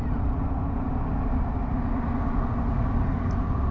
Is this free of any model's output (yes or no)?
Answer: yes